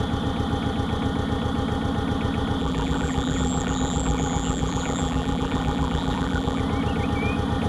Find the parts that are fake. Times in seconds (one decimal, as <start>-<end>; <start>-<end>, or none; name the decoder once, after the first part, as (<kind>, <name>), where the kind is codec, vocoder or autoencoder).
2.6-6.6 (vocoder, BigVGAN v2)